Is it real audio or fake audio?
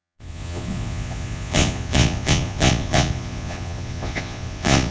fake